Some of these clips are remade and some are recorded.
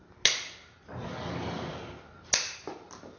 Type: recorded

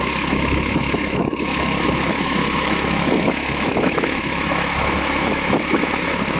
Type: remade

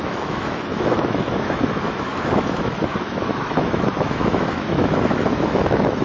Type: remade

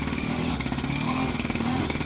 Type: remade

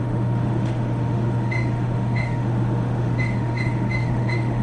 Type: remade